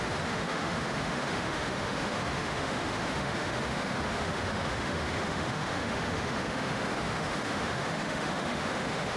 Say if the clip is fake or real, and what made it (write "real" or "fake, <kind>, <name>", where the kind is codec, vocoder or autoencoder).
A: fake, autoencoder, DAC-VAE